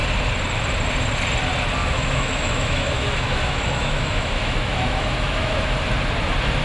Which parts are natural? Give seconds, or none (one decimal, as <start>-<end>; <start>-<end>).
0.0-1.8; 5.8-6.6